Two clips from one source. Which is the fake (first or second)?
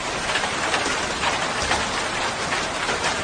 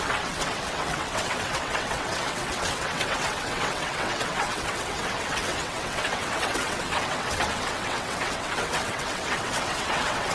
second